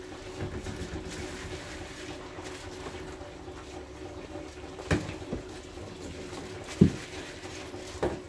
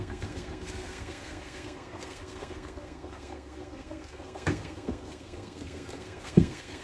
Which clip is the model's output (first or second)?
second